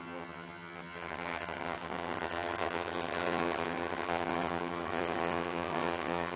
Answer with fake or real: fake